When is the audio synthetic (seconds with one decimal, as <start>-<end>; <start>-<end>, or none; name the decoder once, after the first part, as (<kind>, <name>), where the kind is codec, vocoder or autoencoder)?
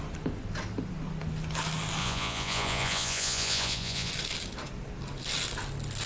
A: 2.0-4.1 (vocoder, Vocos)